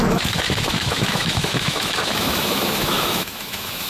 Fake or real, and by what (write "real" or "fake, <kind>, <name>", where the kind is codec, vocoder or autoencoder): fake, autoencoder, DAC-VAE